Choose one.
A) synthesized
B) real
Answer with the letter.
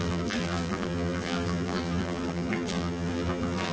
A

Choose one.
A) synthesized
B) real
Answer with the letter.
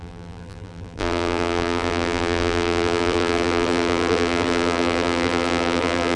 A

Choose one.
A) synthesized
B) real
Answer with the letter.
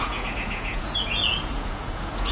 A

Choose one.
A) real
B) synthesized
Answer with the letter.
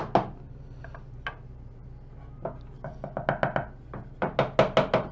A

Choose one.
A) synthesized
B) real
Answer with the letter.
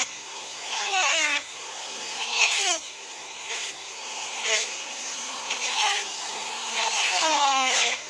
A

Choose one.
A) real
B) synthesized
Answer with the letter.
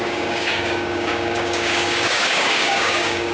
B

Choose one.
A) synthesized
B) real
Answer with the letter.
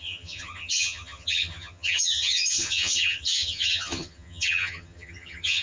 A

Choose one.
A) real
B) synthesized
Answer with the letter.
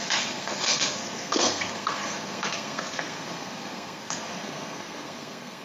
B